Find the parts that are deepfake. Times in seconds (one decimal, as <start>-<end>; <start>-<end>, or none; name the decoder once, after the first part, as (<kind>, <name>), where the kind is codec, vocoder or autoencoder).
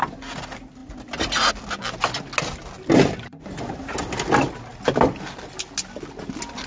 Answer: none